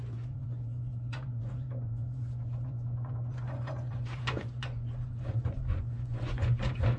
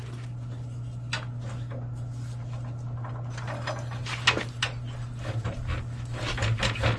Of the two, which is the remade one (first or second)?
first